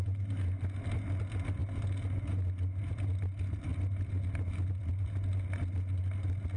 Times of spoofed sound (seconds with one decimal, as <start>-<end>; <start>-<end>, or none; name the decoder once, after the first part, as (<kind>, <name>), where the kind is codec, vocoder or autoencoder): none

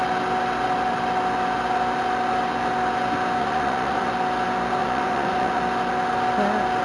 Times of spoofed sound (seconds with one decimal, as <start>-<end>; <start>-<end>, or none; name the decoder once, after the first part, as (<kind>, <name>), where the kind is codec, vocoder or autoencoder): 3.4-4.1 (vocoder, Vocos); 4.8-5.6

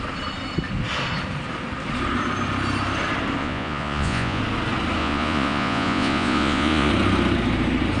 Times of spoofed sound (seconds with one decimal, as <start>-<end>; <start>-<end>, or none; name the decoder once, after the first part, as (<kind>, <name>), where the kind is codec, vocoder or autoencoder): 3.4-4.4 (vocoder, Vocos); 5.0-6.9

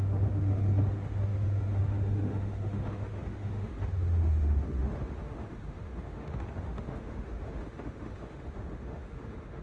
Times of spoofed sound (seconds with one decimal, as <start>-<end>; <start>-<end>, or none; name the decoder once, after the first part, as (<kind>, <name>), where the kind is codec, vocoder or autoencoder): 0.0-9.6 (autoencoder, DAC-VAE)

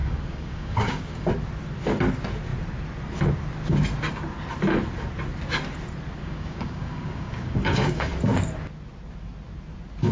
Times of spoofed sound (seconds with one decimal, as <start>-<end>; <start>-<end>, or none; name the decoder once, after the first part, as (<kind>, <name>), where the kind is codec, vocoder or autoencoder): 0.0-1.3 (codec, DAC); 6.2-8.1

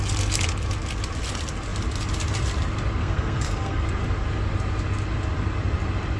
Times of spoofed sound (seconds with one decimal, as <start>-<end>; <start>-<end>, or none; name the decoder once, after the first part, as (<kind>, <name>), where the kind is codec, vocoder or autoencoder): 3.0-3.9 (codec, SNAC)

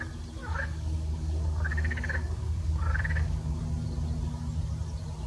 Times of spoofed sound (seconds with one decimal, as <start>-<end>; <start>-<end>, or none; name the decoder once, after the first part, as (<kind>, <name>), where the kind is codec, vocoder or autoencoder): 0.4-3.6 (codec, DAC)